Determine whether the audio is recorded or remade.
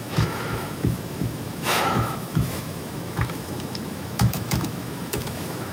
remade